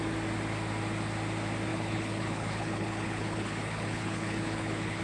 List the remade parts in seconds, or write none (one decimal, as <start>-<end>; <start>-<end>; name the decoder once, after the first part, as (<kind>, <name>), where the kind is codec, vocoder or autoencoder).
1.7-5.0 (codec, HILCodec)